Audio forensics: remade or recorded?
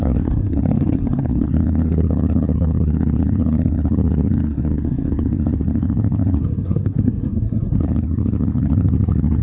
remade